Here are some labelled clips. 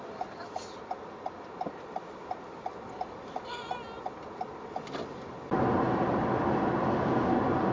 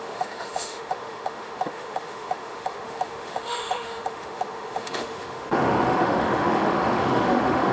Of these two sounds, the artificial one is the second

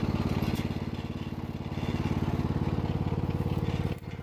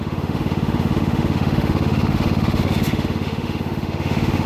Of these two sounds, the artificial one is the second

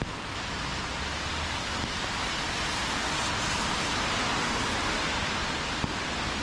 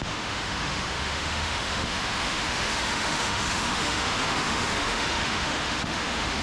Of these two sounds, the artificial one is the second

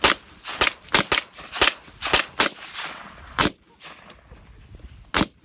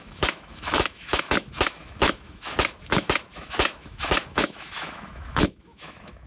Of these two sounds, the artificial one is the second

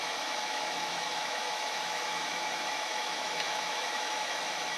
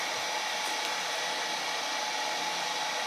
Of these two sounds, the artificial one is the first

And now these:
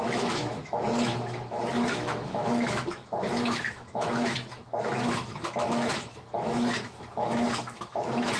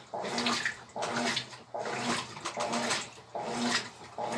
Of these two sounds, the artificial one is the first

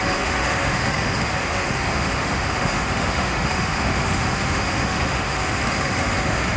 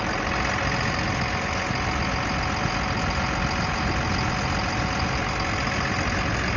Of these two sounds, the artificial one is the first